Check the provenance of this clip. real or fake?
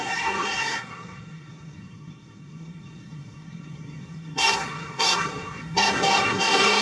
fake